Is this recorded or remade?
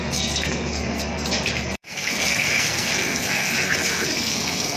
remade